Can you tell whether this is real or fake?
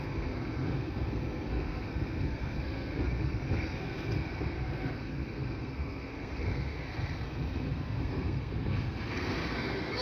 fake